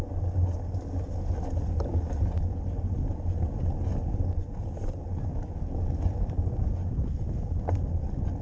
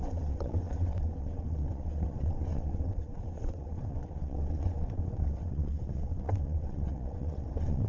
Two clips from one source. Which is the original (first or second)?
first